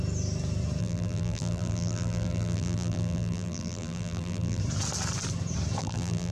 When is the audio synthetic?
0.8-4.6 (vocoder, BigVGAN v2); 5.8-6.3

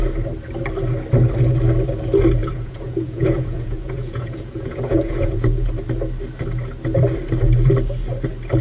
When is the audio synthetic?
2.4-5.7 (vocoder, Vocos)

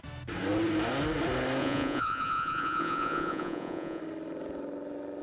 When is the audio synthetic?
1.6-4.0 (vocoder, Vocos)

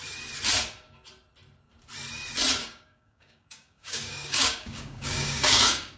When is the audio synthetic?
2.6-6.0 (codec, DAC)

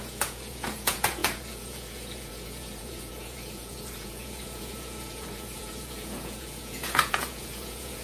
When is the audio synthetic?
0.0-8.0 (vocoder, Vocos)

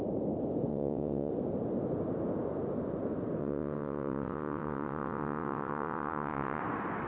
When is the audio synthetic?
0.7-1.3 (vocoder, WaveNeXt); 3.4-6.6